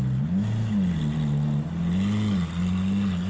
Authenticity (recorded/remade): recorded